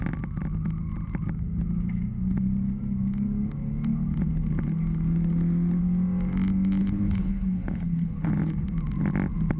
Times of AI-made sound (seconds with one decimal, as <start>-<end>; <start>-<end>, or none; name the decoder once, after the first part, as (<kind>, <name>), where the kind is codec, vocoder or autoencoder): 6.8-8.3 (codec, HILCodec)

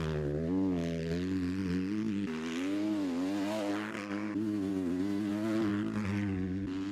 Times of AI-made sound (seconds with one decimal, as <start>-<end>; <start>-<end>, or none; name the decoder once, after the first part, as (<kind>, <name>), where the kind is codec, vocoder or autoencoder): none

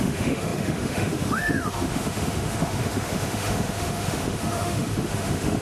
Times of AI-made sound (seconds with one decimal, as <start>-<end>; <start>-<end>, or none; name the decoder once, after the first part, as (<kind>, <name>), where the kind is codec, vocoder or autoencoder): 0.0-5.6 (autoencoder, DAC-VAE)

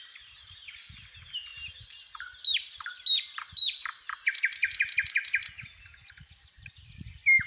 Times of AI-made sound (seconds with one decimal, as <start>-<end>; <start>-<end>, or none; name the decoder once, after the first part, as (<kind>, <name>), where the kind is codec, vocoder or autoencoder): none

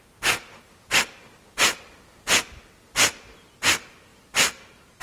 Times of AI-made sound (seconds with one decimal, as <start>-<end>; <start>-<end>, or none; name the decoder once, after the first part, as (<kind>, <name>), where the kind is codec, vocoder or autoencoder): none